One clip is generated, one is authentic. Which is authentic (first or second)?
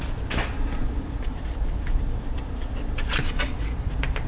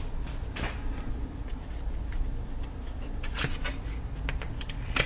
second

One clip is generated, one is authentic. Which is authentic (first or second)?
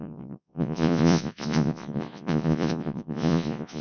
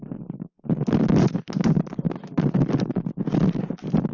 second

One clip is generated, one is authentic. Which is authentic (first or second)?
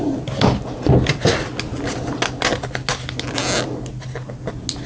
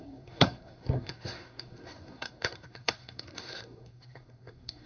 first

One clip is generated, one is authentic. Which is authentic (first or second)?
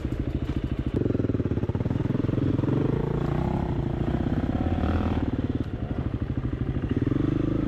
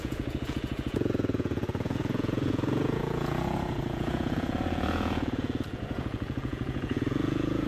first